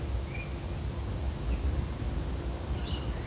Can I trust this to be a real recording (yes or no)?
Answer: yes